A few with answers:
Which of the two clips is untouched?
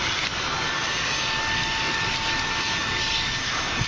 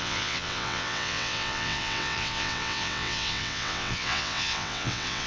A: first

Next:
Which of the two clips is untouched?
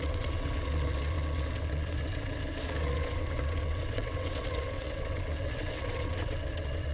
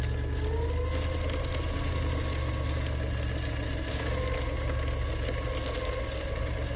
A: second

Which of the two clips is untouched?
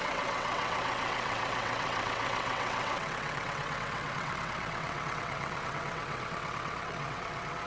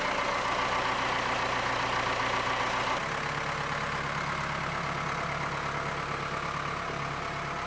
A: second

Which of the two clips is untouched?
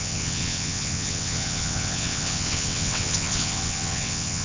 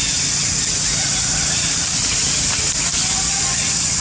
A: second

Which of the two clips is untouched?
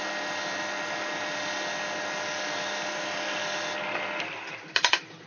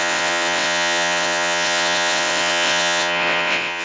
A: first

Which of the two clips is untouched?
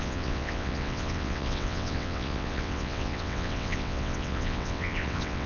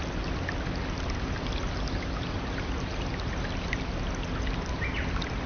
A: second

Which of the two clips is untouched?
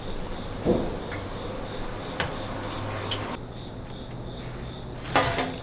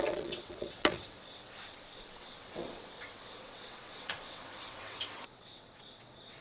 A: first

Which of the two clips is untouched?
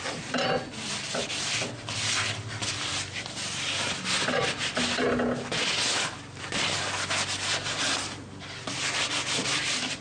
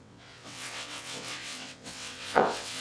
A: first